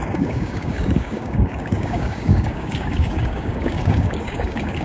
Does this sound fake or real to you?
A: fake